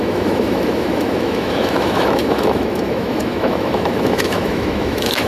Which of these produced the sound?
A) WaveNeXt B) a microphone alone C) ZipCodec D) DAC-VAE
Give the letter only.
D